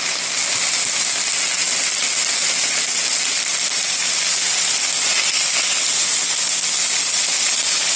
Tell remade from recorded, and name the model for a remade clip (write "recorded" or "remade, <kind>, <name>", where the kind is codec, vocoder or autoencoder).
recorded